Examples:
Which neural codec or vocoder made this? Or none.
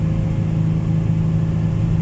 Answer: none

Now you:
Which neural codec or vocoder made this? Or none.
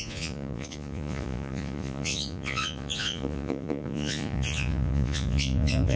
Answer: vocoder, Vocos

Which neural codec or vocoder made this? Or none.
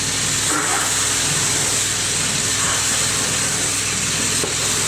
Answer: none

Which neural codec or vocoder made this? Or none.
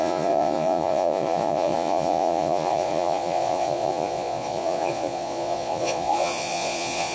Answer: vocoder, Vocos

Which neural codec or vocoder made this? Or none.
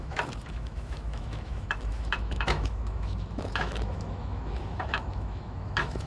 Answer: autoencoder, DAC-VAE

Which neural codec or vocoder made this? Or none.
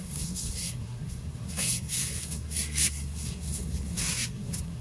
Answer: codec, SNAC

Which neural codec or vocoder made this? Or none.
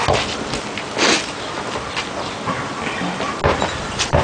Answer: none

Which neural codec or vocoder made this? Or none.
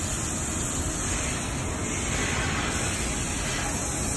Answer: none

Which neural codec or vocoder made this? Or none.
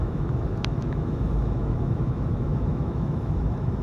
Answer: autoencoder, DAC-VAE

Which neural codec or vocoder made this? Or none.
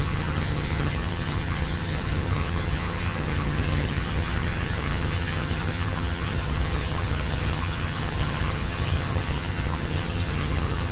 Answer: vocoder, HiFi-GAN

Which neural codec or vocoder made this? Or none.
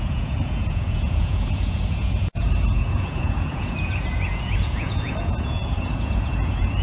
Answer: vocoder, Vocos